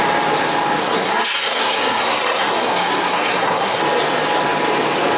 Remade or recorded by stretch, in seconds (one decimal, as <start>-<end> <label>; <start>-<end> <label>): 0.0-0.8 recorded; 0.8-3.8 remade; 3.8-5.2 recorded